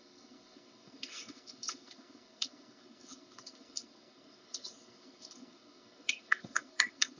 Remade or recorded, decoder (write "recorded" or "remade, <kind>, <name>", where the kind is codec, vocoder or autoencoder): remade, codec, SNAC